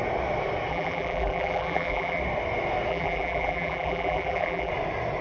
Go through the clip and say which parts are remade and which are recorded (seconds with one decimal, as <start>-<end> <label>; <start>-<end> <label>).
0.0-0.7 recorded; 0.7-2.2 remade; 2.2-2.9 recorded; 2.9-4.7 remade; 4.7-5.2 recorded